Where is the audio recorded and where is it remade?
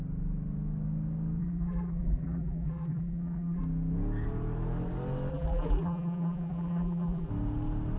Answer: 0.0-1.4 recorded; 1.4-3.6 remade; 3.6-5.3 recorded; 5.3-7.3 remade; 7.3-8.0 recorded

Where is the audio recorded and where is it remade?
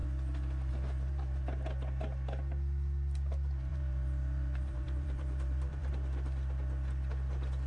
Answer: 0.0-3.7 recorded; 3.7-5.9 remade; 5.9-7.7 recorded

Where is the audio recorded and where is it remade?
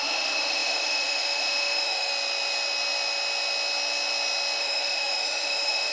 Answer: 0.0-2.1 remade; 2.1-4.6 recorded; 4.6-5.9 remade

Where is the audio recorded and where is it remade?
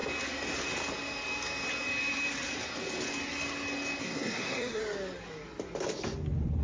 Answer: 0.0-4.0 recorded; 4.0-4.8 remade; 4.8-6.6 recorded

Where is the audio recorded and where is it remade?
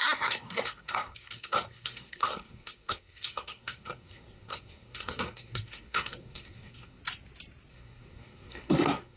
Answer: 0.0-7.0 remade; 7.0-7.7 recorded; 7.7-9.2 remade